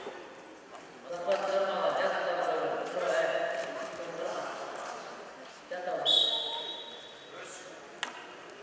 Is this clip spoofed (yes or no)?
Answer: no